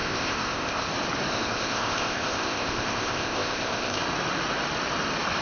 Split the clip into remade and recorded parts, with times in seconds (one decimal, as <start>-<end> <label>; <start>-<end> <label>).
0.0-0.9 remade; 0.9-1.3 recorded; 1.3-4.0 remade; 4.0-5.4 recorded